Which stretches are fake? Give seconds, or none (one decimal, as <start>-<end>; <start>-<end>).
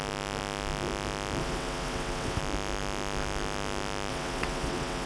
1.4-2.4; 4.1-5.1